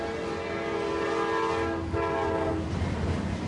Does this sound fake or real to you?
real